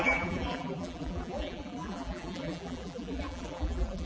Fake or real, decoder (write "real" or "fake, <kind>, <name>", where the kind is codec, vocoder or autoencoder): fake, vocoder, BigVGAN v2